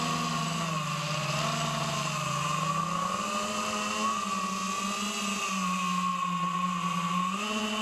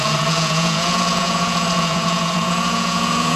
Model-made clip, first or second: second